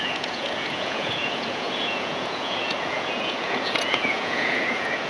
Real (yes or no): no